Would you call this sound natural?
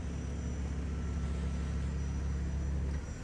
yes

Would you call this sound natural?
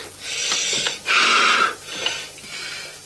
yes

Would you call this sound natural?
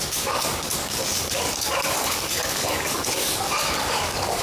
no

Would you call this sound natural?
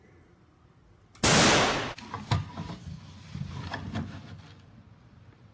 yes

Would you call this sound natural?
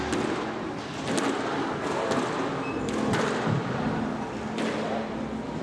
yes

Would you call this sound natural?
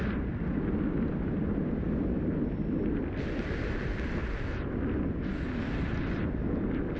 yes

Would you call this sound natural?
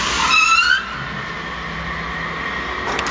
yes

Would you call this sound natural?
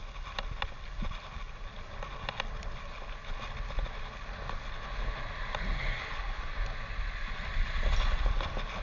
yes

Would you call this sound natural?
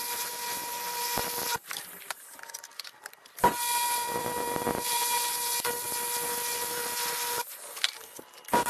no